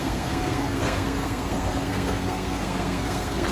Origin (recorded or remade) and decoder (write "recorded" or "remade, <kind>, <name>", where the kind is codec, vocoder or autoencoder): remade, codec, SNAC